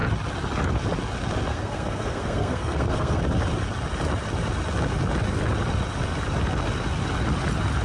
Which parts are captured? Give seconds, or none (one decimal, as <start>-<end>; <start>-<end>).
0.0-1.5; 3.2-7.8